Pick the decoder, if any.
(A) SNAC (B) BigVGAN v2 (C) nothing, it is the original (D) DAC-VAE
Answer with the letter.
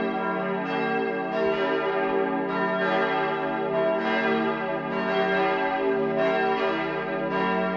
C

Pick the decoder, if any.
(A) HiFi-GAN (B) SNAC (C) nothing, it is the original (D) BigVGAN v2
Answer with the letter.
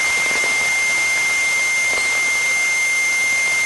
C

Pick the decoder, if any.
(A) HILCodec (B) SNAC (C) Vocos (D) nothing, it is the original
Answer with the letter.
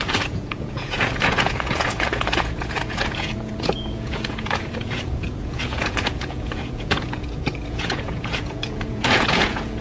C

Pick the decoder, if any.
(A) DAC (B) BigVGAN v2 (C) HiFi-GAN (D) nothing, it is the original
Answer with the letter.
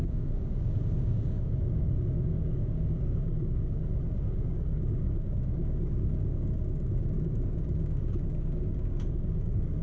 A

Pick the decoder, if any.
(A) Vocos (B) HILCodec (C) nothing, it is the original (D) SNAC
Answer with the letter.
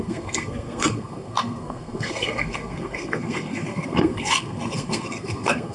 D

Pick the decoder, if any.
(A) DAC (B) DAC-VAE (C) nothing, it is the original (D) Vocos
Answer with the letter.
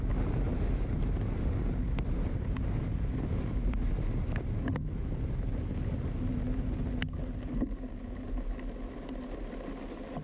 C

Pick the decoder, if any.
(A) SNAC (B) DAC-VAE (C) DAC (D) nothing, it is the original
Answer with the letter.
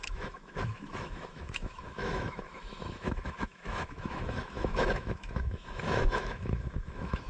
B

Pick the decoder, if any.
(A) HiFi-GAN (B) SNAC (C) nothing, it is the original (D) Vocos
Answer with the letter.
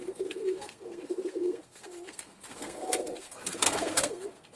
B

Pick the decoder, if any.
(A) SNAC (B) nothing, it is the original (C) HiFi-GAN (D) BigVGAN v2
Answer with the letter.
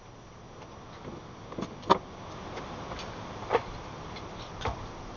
B